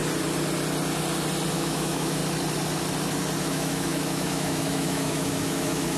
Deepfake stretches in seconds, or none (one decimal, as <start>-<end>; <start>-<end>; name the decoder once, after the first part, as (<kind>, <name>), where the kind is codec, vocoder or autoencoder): 1.5-2.2 (autoencoder, DAC-VAE); 3.4-6.0

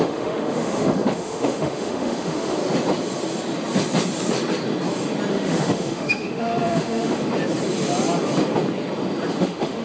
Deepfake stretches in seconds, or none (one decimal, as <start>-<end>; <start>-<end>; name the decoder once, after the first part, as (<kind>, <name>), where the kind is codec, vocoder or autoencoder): 0.0-2.6 (autoencoder, DAC-VAE); 5.3-7.2; 9.3-9.8

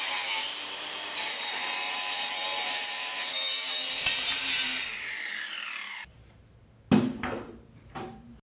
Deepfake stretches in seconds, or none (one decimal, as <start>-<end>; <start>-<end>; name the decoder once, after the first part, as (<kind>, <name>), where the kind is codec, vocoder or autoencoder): 0.0-4.7 (vocoder, BigVGAN v2); 7.2-8.5

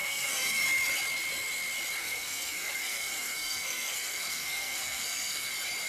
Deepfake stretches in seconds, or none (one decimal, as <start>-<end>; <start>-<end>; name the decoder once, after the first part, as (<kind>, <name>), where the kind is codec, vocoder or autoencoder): 0.0-0.6 (codec, SNAC); 2.0-5.5

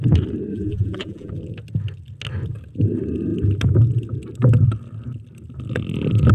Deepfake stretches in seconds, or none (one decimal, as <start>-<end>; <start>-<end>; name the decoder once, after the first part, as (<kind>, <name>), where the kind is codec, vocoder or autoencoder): 0.5-1.3 (vocoder, BigVGAN v2)

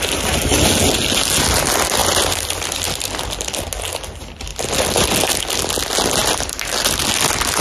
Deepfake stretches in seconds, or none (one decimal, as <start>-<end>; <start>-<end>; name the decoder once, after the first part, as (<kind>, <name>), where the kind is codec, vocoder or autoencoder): 2.0-3.1 (vocoder, BigVGAN v2); 4.5-5.4; 6.2-7.0

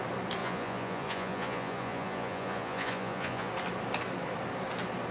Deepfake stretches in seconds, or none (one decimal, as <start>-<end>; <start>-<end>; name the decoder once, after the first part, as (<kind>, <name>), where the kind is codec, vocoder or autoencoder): 0.4-3.5 (vocoder, Vocos)

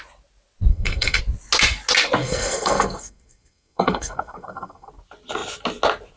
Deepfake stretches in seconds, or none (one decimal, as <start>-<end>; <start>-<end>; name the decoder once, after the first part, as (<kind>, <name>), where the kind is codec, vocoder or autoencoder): 0.7-1.2 (codec, SNAC); 2.2-4.9